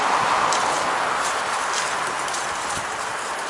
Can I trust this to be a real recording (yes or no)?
yes